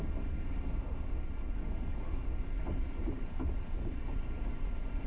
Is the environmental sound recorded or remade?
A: recorded